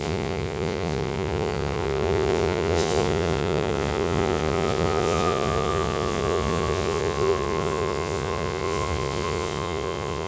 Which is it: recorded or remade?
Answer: remade